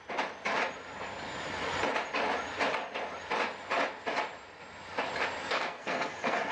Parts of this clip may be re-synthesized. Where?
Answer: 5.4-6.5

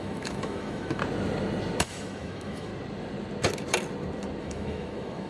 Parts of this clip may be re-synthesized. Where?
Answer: 0.0-1.0; 1.8-2.7; 4.4-5.3

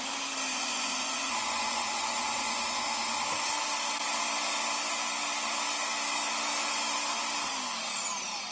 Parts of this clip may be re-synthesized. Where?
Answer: 0.5-2.8